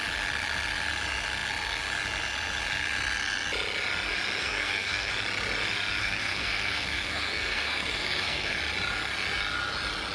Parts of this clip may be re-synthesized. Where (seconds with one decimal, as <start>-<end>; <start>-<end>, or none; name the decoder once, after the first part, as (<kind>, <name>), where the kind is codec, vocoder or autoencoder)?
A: 4.4-5.1 (codec, SNAC); 6.0-8.6